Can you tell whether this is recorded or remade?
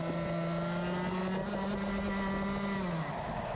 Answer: recorded